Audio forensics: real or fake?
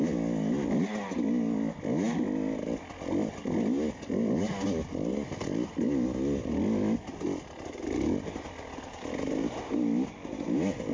real